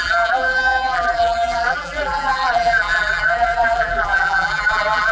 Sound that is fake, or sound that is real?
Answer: fake